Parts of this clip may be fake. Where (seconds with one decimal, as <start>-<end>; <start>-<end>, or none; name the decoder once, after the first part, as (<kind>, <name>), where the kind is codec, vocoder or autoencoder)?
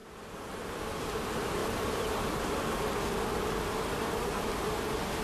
0.0-1.0 (vocoder, BigVGAN v2); 1.6-2.5